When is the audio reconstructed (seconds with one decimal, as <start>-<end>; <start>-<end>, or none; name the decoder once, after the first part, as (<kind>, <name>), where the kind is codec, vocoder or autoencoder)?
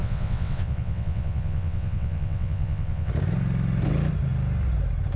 0.0-3.1 (vocoder, WaveNeXt)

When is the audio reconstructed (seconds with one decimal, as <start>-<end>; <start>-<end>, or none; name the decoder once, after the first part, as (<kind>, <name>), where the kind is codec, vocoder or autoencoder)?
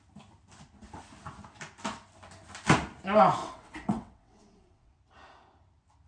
3.4-4.9 (vocoder, WaveNeXt)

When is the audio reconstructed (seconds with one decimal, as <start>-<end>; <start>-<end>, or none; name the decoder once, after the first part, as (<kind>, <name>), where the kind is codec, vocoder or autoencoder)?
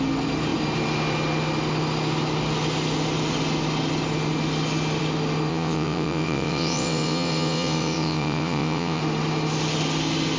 5.5-9.0 (vocoder, WaveNeXt)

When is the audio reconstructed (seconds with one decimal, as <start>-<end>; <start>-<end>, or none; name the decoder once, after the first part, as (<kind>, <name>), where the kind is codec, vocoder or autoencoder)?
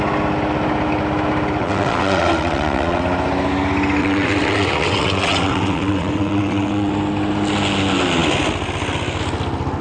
1.6-3.0 (vocoder, WaveNeXt); 4.0-6.9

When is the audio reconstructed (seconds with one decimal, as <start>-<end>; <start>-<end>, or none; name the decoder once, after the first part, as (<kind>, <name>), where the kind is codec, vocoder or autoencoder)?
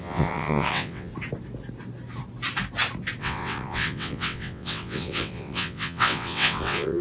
0.0-1.1 (vocoder, WaveNeXt); 3.2-7.0